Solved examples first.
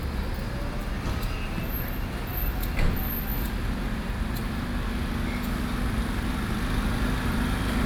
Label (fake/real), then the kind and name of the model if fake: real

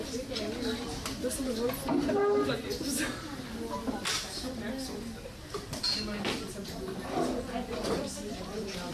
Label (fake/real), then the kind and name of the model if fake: real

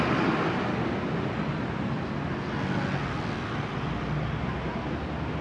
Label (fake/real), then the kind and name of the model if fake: real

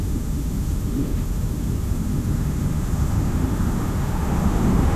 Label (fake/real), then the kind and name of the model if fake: fake, autoencoder, DAC-VAE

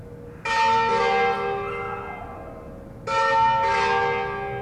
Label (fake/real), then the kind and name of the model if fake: real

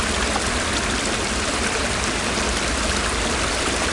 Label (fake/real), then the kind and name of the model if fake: real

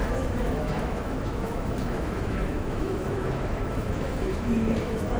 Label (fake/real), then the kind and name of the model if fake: fake, autoencoder, DAC-VAE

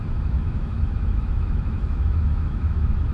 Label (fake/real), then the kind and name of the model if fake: fake, autoencoder, DAC-VAE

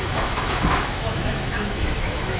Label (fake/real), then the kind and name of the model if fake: fake, autoencoder, DAC-VAE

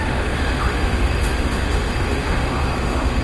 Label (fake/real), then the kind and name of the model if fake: fake, autoencoder, DAC-VAE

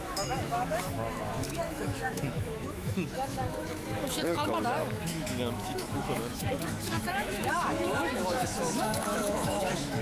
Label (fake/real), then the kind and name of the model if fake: fake, autoencoder, DAC-VAE